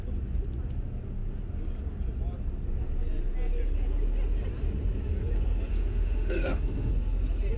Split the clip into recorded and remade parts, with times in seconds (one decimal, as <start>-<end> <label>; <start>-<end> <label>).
0.0-5.7 recorded; 5.7-6.9 remade; 6.9-7.6 recorded